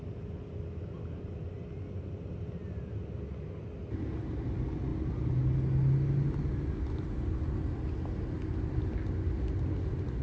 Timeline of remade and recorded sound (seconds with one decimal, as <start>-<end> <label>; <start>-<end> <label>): 0.0-10.2 recorded